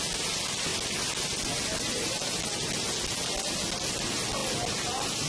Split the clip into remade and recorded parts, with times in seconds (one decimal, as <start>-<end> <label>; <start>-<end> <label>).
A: 0.0-5.3 recorded